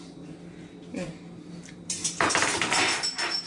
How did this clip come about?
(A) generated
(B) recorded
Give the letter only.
A